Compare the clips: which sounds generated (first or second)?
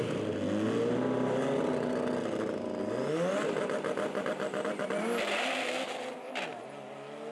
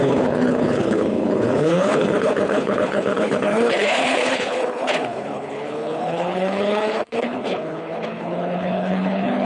second